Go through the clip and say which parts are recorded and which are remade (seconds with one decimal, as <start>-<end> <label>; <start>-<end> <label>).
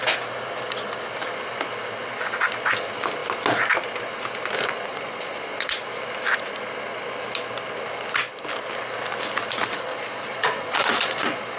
0.0-4.9 recorded; 4.9-5.8 remade; 5.8-9.9 recorded; 9.9-11.6 remade